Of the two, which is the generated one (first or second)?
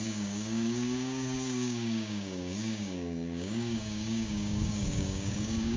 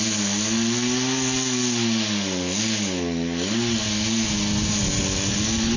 first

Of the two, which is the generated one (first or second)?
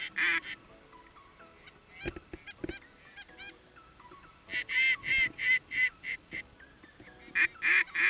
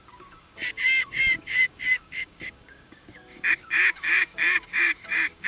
second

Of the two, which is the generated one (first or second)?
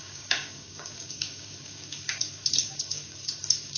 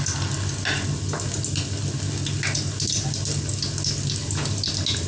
first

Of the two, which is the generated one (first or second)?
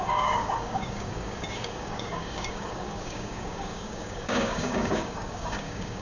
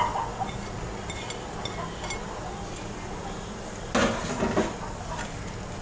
first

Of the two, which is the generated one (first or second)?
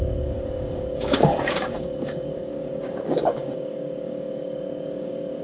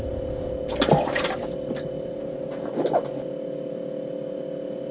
first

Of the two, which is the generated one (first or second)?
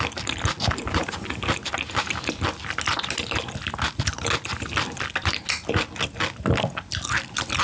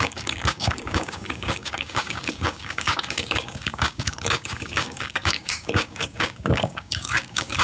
second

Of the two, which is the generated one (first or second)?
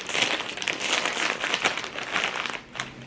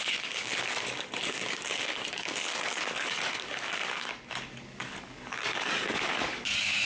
second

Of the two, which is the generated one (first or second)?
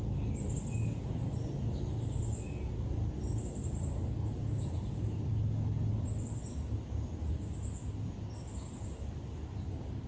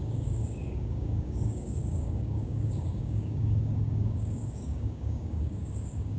second